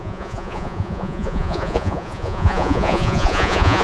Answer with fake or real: fake